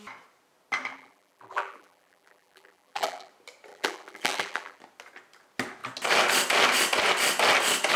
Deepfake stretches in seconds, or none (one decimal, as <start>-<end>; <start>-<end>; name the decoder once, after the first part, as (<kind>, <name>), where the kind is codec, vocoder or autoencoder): 0.9-3.3 (vocoder, BigVGAN v2); 3.7-4.8